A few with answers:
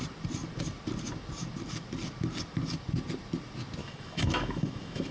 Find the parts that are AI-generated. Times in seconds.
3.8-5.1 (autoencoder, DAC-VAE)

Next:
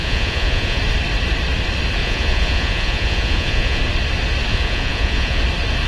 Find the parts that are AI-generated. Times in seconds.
0.0-0.8 (vocoder, Vocos); 2.0-3.8; 4.5-5.4

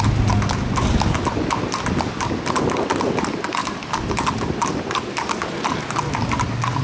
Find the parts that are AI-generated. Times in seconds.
none

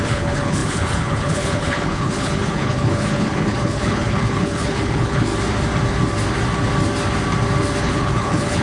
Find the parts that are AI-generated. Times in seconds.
0.0-5.3 (codec, HILCodec); 7.8-8.6